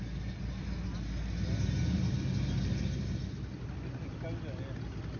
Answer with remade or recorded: recorded